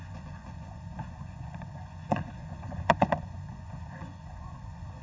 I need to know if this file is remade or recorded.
remade